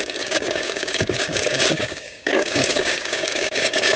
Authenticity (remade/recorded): remade